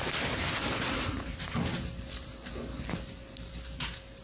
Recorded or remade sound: recorded